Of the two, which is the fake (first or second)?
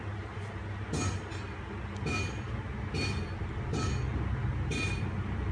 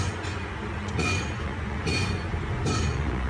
second